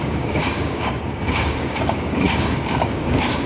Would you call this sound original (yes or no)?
no